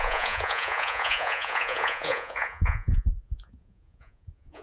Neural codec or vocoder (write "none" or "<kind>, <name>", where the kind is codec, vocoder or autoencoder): vocoder, Vocos